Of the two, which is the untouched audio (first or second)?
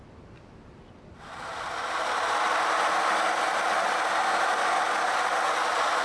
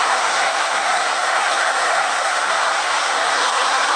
first